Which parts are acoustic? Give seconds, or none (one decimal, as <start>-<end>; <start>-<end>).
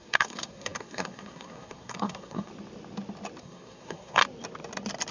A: 2.5-3.4; 4.2-5.1